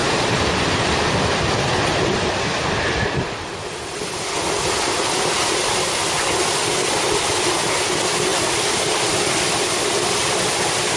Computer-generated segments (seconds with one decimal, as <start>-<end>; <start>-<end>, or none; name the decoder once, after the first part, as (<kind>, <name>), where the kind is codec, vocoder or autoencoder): none